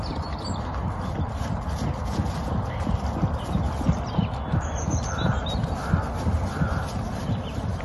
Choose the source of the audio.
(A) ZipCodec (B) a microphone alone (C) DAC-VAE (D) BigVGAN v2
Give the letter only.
B